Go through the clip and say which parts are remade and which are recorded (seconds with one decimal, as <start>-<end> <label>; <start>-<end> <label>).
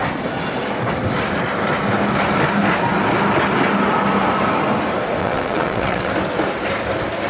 0.0-5.2 recorded; 5.2-6.1 remade; 6.1-7.3 recorded